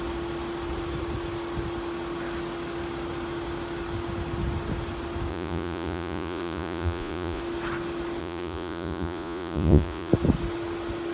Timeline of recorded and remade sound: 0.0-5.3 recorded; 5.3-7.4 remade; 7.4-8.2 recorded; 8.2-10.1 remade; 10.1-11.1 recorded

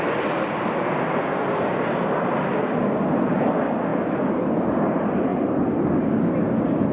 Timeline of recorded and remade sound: 0.0-2.3 recorded; 2.3-2.8 remade; 2.8-6.9 recorded

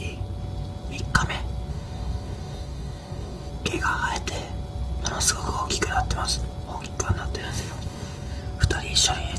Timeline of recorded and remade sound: 0.0-1.7 recorded; 1.7-3.5 remade; 3.5-7.4 recorded; 7.4-8.4 remade; 8.4-9.4 recorded

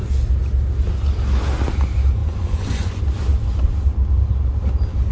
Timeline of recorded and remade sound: 0.0-2.2 recorded; 2.2-3.0 remade; 3.0-5.1 recorded

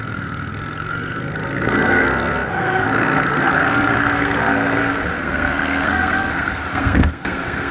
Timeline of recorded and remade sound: 0.0-7.7 remade

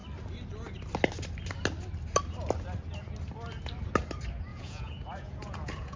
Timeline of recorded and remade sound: 0.0-4.5 recorded; 4.5-6.0 remade